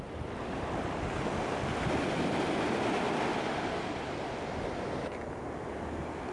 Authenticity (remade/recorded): recorded